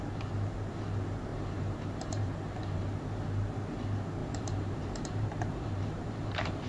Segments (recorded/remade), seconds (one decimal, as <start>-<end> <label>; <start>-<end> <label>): 0.0-1.3 recorded; 1.3-3.0 remade; 3.0-4.2 recorded; 4.2-6.7 remade

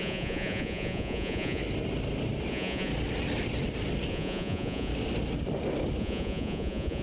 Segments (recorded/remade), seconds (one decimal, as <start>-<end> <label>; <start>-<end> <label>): 0.0-1.6 remade; 1.6-2.5 recorded; 2.5-2.9 remade; 2.9-4.1 recorded; 4.1-4.9 remade; 4.9-6.0 recorded; 6.0-7.0 remade

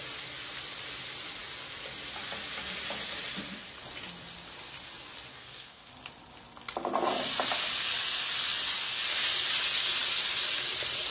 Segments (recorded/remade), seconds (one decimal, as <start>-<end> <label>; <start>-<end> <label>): 0.0-5.3 recorded; 5.3-5.9 remade; 5.9-11.1 recorded

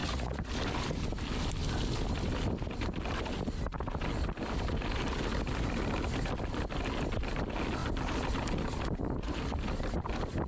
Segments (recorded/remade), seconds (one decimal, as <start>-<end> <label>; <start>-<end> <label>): 0.0-0.5 remade; 0.5-10.5 recorded

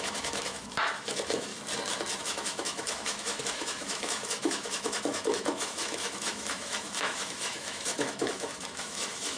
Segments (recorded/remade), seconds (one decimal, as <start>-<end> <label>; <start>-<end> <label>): 0.0-1.5 remade; 1.5-2.2 recorded; 2.2-9.4 remade

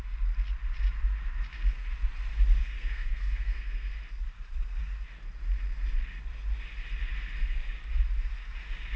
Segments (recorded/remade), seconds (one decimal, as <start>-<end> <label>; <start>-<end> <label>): 0.0-2.6 recorded; 2.6-3.9 remade; 3.9-9.0 recorded

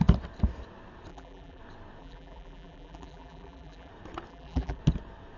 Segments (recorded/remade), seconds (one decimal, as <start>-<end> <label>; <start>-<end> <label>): 0.0-1.1 recorded; 1.1-1.6 remade; 1.6-2.0 recorded; 2.0-3.9 remade; 3.9-4.3 recorded; 4.3-4.8 remade; 4.8-5.4 recorded